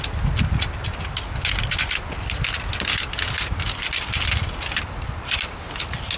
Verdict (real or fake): real